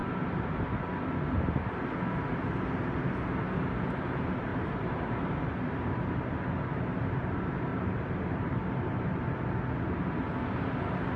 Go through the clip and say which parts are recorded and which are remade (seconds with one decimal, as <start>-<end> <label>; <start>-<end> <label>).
0.0-0.6 remade; 0.6-4.5 recorded; 4.5-6.1 remade; 6.1-7.7 recorded; 7.7-9.2 remade; 9.2-11.2 recorded